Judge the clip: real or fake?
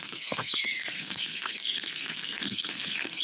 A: fake